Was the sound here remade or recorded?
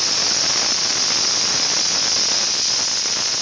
recorded